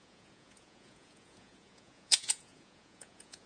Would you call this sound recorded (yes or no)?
no